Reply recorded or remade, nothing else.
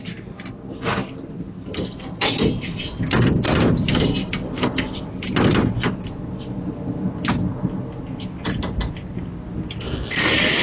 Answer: recorded